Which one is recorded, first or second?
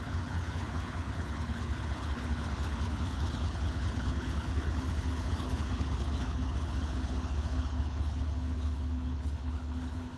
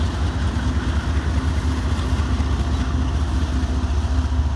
second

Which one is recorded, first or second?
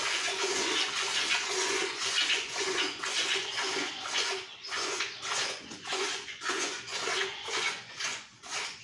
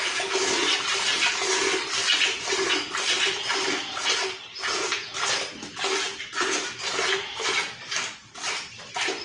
second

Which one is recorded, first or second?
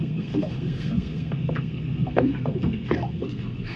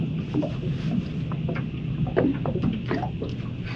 second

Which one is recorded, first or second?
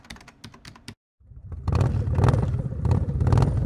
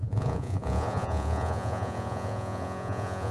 first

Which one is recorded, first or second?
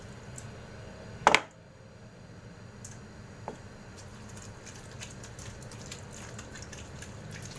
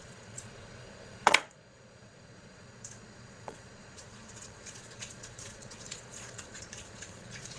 first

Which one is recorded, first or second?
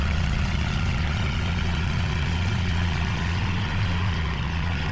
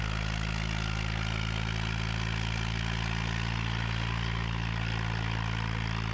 second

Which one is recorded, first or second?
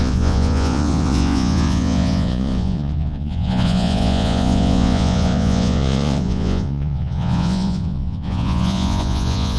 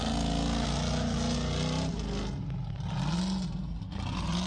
second